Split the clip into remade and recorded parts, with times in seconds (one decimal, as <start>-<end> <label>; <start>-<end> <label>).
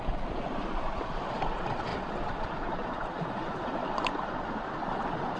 0.0-3.8 remade; 3.8-4.8 recorded; 4.8-5.4 remade